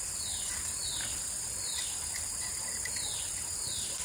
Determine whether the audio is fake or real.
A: fake